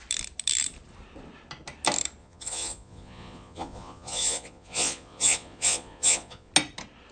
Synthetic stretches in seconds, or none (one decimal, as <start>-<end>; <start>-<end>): 2.2-6.5